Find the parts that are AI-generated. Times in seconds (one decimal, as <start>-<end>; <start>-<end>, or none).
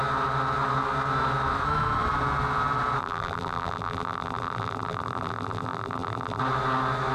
3.0-6.4